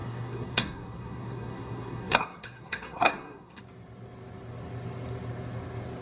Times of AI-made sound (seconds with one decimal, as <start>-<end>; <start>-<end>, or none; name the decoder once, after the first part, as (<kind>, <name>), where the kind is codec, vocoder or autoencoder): 0.0-3.6 (codec, SNAC)